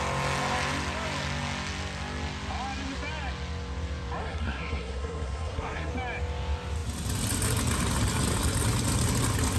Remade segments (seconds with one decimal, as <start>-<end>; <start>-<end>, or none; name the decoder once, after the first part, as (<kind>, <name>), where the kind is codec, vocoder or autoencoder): 4.2-5.9 (codec, SNAC)